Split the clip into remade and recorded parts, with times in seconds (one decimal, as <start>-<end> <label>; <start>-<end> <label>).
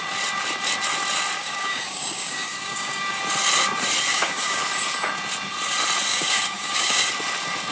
0.0-1.4 recorded; 1.4-3.2 remade; 3.2-4.1 recorded; 4.1-4.6 remade; 4.6-6.1 recorded; 6.1-7.1 remade; 7.1-7.7 recorded